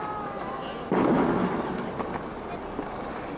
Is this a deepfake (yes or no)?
no